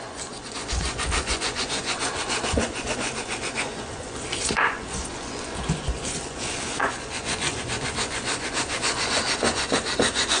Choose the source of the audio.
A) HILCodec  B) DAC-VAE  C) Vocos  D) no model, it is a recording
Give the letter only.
C